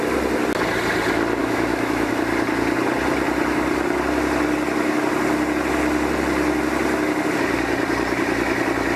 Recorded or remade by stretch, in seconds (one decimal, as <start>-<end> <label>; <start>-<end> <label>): 0.0-1.4 recorded; 1.4-2.1 remade; 2.1-9.0 recorded